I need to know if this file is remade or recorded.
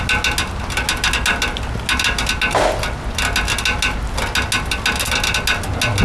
recorded